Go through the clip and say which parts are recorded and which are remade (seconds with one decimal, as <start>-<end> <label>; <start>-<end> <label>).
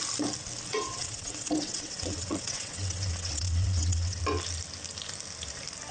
0.0-0.7 recorded; 0.7-4.2 remade; 4.2-5.9 recorded